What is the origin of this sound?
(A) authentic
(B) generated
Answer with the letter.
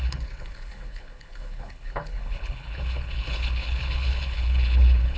B